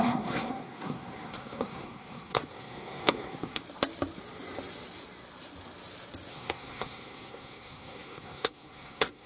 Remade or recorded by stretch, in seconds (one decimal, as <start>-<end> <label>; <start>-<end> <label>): 0.0-3.6 remade; 3.6-6.3 recorded; 6.3-9.3 remade

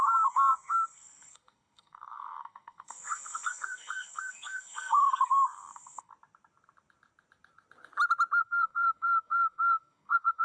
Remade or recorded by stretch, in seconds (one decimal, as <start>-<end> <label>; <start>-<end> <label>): 0.0-6.1 remade; 6.1-8.4 recorded; 8.4-10.4 remade

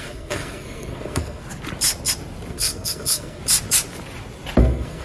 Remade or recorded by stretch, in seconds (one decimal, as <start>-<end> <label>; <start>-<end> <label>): 0.0-1.4 remade; 1.4-2.5 recorded; 2.5-3.4 remade; 3.4-4.6 recorded; 4.6-5.0 remade

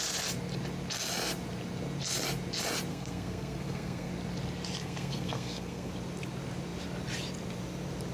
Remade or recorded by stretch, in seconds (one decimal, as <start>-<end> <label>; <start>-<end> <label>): 0.0-2.9 recorded; 2.9-4.1 remade; 4.1-4.8 recorded; 4.8-5.9 remade; 5.9-8.1 recorded

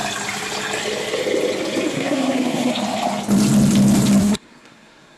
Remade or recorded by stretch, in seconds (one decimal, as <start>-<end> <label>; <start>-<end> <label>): 0.0-1.9 recorded; 1.9-2.7 remade; 2.7-4.2 recorded; 4.2-5.2 remade

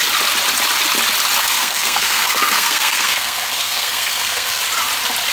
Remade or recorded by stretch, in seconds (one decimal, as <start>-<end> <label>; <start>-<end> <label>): 0.0-1.4 recorded; 1.4-4.6 remade; 4.6-5.3 recorded